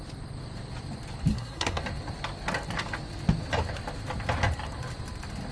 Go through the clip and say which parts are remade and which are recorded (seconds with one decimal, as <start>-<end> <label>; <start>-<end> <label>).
0.0-1.3 recorded; 1.3-1.8 remade; 1.8-5.5 recorded